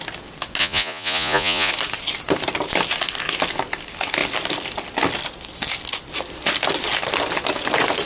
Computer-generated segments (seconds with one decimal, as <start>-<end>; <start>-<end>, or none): 0.6-1.7